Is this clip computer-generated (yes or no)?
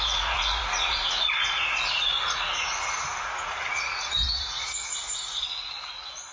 yes